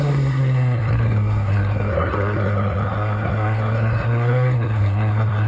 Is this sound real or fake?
fake